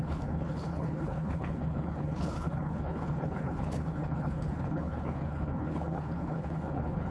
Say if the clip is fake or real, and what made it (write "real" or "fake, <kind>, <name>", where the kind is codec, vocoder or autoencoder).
fake, codec, HILCodec